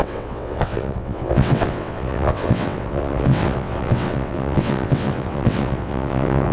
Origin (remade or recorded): remade